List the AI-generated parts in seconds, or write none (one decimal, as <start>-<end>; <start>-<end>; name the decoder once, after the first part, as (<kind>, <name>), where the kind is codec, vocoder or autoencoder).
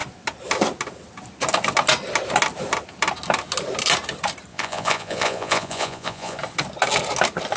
4.5-6.4 (vocoder, Vocos)